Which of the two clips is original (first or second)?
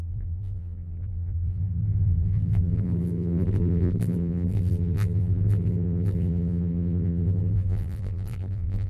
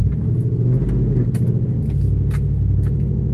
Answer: second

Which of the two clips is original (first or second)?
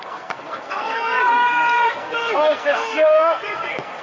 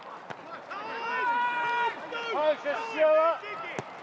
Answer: second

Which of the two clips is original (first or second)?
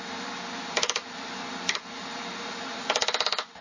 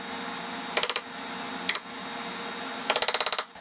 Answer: second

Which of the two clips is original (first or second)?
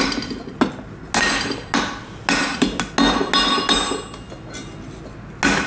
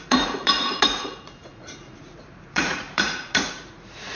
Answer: first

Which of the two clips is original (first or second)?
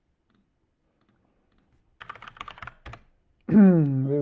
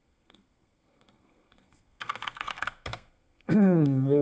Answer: first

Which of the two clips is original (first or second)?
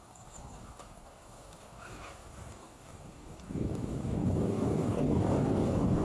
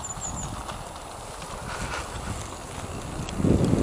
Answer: second